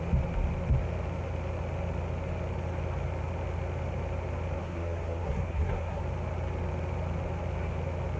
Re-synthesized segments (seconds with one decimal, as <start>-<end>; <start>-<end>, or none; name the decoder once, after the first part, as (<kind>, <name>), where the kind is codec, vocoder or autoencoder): 4.6-6.0 (codec, SNAC)